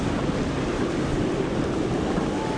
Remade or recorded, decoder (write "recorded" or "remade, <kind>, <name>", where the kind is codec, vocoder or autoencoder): recorded